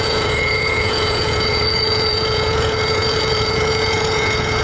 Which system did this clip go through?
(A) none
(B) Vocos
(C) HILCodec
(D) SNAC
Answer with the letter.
B